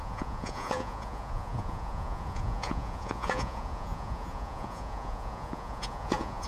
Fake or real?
fake